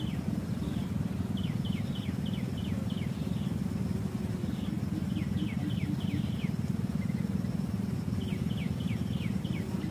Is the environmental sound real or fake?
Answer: real